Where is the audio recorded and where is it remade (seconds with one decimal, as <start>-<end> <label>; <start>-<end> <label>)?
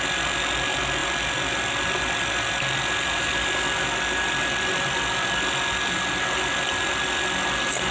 0.0-7.9 recorded